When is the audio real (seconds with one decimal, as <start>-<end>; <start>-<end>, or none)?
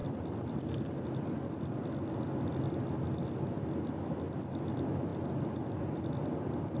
0.0-6.8